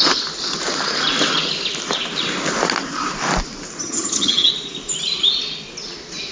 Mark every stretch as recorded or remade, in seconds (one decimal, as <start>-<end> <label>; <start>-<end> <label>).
0.0-3.8 recorded; 3.8-4.5 remade; 4.5-6.3 recorded